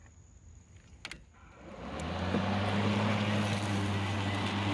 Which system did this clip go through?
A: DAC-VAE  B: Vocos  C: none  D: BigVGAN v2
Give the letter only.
C